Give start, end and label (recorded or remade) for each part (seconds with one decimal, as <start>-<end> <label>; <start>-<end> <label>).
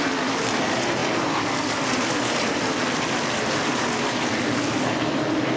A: 0.0-5.6 remade